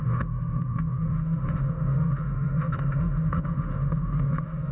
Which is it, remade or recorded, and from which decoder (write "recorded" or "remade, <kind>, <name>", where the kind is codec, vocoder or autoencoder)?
remade, autoencoder, DAC-VAE